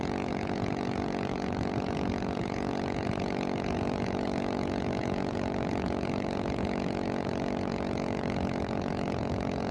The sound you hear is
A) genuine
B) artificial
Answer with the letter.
B